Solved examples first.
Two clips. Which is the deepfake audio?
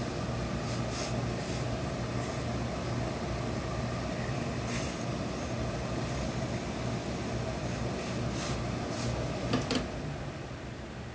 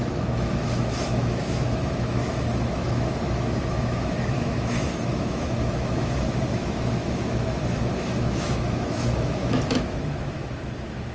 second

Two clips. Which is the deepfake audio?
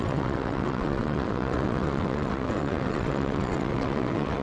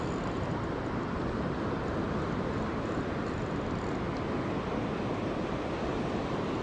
first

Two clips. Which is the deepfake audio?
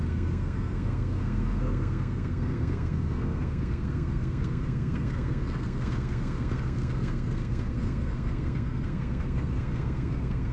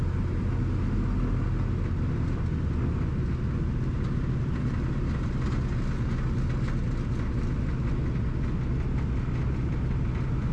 first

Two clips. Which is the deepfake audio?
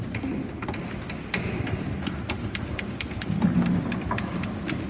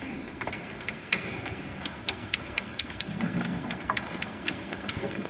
second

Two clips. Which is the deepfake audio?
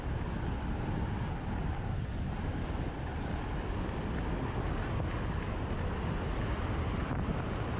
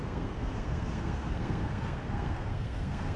second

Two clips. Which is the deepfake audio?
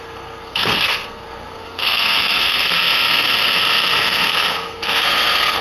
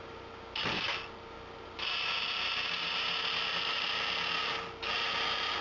first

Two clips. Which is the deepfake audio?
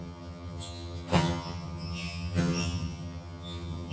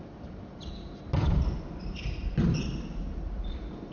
first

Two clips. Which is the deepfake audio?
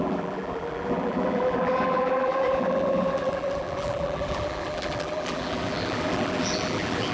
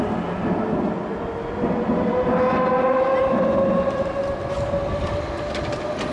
first